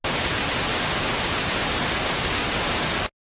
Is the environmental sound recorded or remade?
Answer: recorded